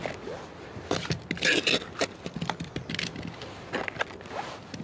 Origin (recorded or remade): recorded